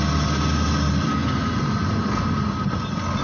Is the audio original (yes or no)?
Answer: yes